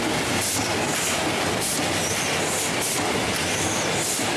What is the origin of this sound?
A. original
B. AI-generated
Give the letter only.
A